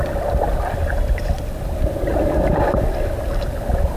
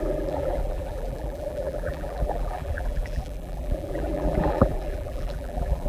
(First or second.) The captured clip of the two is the first